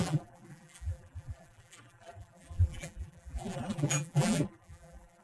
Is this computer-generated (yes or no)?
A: yes